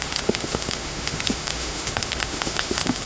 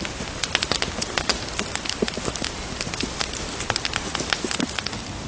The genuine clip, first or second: second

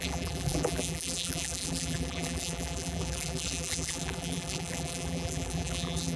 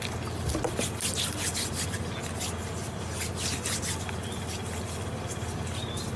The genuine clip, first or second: second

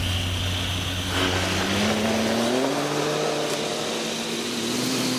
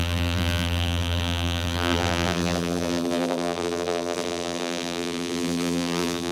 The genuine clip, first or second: first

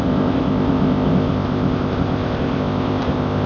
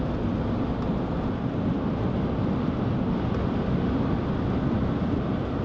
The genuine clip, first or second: second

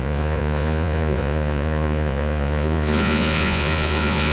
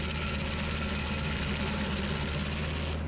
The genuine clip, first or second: second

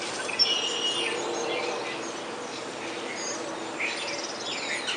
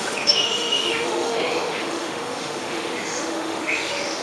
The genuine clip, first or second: first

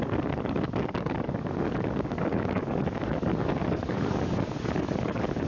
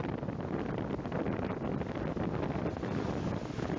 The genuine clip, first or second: second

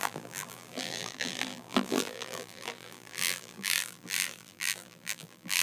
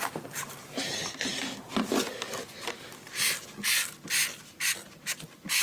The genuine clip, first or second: second